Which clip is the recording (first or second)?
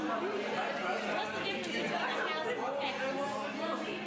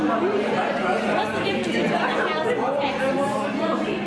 first